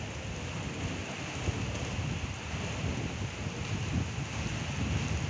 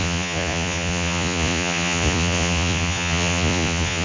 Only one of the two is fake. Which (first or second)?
second